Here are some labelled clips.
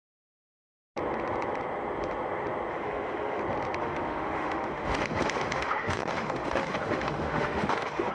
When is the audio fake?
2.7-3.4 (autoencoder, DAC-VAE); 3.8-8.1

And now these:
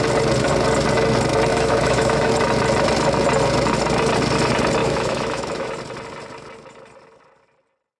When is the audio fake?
1.5-2.3 (autoencoder, DAC-VAE); 4.8-5.7

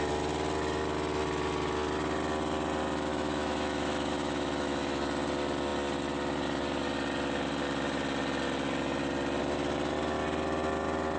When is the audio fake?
3.1-5.0 (autoencoder, DAC-VAE)

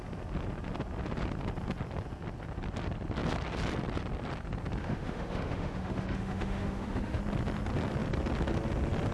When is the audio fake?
4.8-7.2 (autoencoder, DAC-VAE)

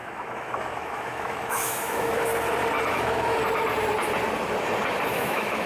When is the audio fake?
0.0-2.3 (autoencoder, DAC-VAE); 2.9-3.4; 5.1-5.7

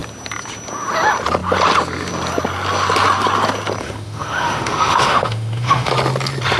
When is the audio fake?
3.8-5.9 (autoencoder, DAC-VAE)